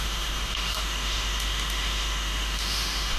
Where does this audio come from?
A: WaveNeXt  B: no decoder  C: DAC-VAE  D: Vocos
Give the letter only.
C